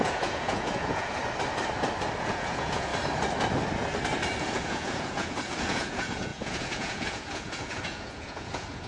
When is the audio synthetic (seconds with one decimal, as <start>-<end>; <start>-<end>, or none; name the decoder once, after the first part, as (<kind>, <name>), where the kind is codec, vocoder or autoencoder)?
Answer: 0.0-1.2 (vocoder, Vocos); 2.2-2.9; 4.4-8.9